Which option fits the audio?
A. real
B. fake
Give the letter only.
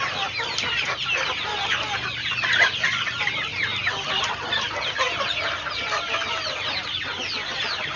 A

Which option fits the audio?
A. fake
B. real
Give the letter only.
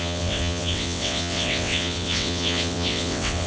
A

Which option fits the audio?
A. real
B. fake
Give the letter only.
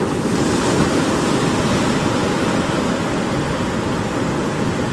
A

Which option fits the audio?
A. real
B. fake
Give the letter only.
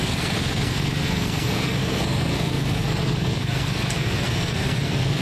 B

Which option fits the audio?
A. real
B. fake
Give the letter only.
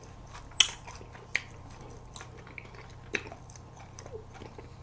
A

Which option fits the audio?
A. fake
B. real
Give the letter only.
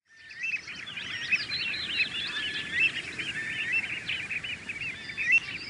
B